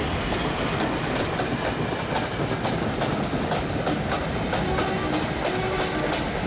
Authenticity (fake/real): real